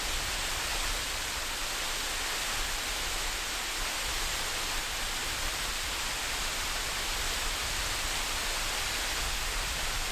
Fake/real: real